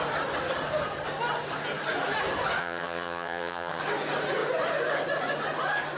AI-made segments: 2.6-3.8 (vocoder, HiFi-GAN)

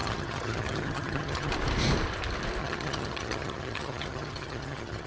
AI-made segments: 0.0-1.5 (vocoder, HiFi-GAN); 2.6-5.1

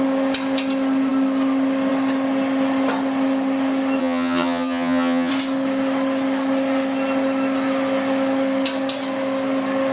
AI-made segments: 4.0-5.3 (vocoder, HiFi-GAN)

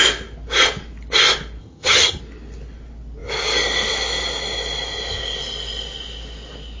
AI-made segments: 1.6-2.2 (vocoder, HiFi-GAN)

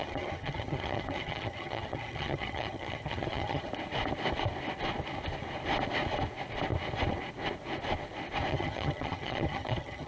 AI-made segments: 0.0-3.7 (vocoder, HiFi-GAN); 8.5-10.1

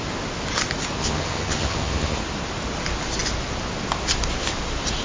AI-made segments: 1.0-2.2 (vocoder, HiFi-GAN)

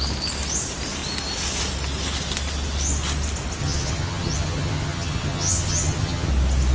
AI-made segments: 3.6-6.3 (vocoder, HiFi-GAN)